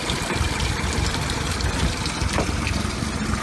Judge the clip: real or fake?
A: real